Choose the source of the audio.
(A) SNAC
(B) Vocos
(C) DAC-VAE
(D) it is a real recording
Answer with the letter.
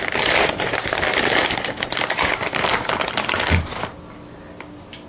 D